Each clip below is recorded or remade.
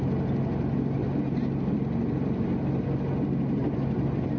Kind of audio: recorded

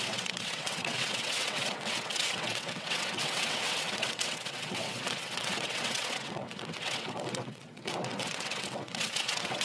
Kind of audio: remade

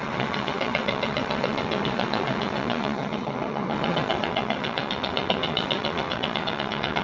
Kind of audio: remade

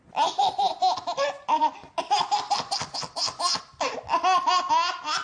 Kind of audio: recorded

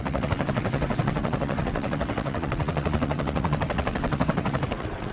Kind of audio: remade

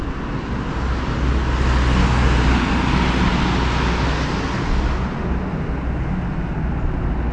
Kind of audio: recorded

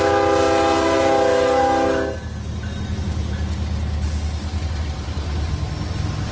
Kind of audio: recorded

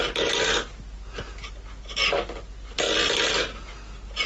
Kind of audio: recorded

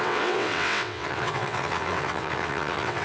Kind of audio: remade